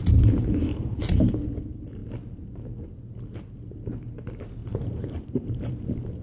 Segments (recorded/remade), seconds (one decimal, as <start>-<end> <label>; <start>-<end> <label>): 0.0-0.7 recorded; 0.7-1.3 remade; 1.3-4.6 recorded; 4.6-5.7 remade; 5.7-6.2 recorded